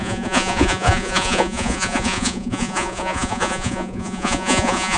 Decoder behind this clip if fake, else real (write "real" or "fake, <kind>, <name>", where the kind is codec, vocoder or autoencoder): fake, vocoder, Vocos